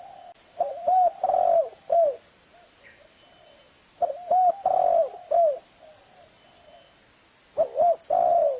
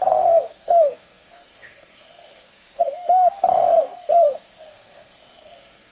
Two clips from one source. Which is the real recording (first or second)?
first